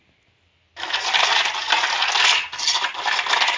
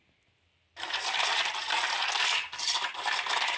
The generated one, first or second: second